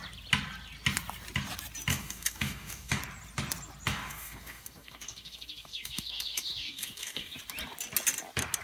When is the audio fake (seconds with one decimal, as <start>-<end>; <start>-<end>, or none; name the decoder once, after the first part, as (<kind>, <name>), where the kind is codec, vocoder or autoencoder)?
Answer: 1.9-3.0 (codec, DAC); 3.9-7.4